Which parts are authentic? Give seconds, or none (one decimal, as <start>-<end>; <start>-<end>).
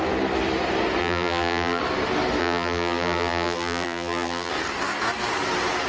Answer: 0.0-1.0; 1.8-2.4; 4.5-5.9